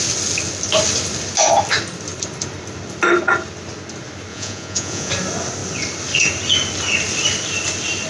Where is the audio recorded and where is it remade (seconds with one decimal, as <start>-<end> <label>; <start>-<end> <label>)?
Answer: 0.0-4.3 recorded; 4.3-5.1 remade; 5.1-8.1 recorded

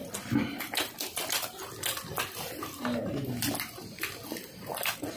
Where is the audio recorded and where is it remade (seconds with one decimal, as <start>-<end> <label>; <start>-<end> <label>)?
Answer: 0.0-5.2 recorded

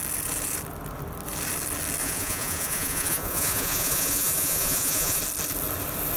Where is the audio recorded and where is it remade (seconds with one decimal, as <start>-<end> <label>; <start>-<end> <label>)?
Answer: 0.0-2.0 recorded; 2.0-5.2 remade; 5.2-6.2 recorded

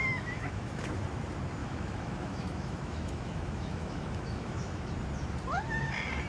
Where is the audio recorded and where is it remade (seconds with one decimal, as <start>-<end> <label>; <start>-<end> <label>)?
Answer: 0.0-0.8 remade; 0.8-1.6 recorded; 1.6-4.9 remade; 4.9-6.3 recorded

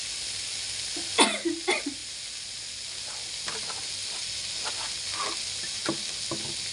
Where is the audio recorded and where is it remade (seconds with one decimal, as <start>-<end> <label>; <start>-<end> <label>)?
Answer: 0.0-6.7 recorded

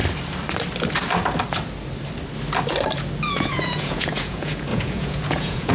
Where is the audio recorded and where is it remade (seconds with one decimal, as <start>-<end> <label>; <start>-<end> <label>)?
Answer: 0.0-3.4 recorded; 3.4-5.7 remade